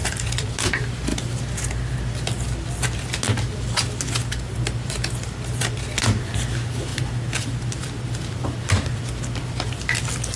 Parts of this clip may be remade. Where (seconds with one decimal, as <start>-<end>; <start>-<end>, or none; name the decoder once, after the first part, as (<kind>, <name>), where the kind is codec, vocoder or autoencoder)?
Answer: 0.0-0.5 (vocoder, BigVGAN v2)

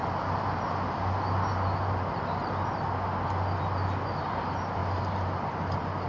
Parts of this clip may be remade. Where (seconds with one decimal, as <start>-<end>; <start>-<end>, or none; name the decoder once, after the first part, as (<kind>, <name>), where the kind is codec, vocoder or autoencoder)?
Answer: 4.8-6.1 (vocoder, BigVGAN v2)

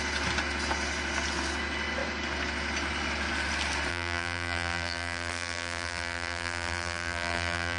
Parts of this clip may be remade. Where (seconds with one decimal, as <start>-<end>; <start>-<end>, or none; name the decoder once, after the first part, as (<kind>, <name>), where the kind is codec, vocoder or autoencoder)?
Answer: 3.9-7.8 (vocoder, BigVGAN v2)

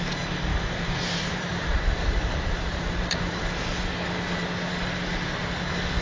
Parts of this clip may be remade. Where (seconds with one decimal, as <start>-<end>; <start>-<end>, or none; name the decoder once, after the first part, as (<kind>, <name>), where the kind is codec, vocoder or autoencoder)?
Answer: 0.5-3.5 (vocoder, BigVGAN v2)

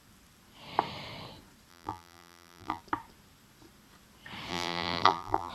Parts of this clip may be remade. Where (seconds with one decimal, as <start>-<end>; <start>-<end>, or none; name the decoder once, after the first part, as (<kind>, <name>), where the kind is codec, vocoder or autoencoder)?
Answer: 1.7-2.8 (vocoder, BigVGAN v2); 4.5-5.5

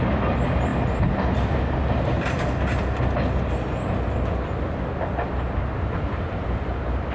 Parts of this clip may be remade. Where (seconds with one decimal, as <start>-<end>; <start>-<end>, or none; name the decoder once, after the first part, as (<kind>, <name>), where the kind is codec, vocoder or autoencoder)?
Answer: 0.0-0.7 (vocoder, BigVGAN v2); 4.9-7.1

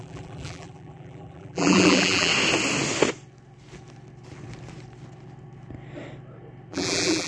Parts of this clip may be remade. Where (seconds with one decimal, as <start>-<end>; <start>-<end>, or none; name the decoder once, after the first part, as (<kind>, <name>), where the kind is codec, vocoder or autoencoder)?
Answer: 0.0-2.3 (vocoder, BigVGAN v2); 6.7-7.3

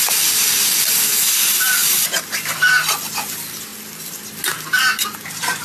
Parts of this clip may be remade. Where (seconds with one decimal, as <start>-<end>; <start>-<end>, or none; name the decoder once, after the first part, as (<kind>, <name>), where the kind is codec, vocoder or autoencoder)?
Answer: 1.8-2.7 (vocoder, BigVGAN v2)